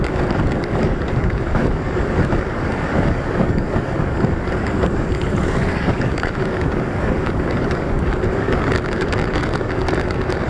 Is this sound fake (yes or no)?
yes